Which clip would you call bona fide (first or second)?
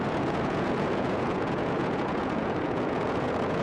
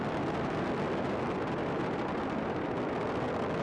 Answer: second